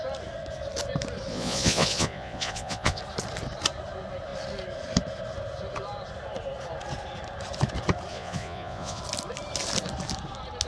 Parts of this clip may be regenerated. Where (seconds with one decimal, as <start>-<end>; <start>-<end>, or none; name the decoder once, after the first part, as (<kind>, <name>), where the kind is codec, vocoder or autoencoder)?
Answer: 1.3-3.0 (vocoder, Vocos); 8.1-9.0